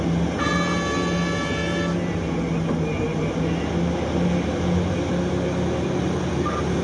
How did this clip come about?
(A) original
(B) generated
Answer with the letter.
A